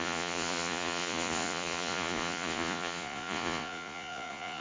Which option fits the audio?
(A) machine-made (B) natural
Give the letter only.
A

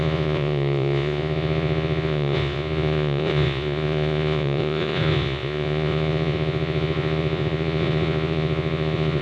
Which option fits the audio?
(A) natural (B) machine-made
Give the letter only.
B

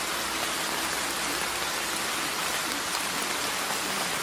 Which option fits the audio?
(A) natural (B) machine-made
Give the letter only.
A